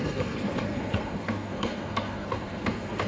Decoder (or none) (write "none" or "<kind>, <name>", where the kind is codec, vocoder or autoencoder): codec, SNAC